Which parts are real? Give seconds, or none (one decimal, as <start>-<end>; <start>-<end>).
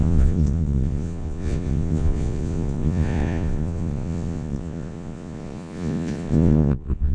none